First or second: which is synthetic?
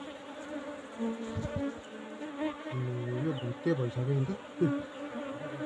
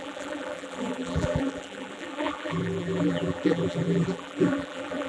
second